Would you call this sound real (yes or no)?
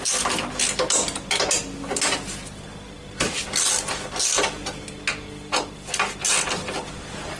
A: yes